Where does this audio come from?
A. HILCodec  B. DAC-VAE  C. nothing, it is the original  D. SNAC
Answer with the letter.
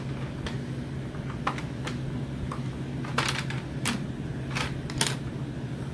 C